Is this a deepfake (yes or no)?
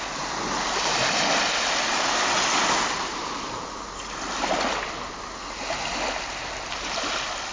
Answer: no